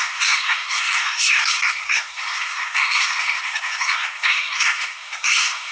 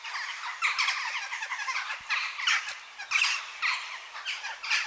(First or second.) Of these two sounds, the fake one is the first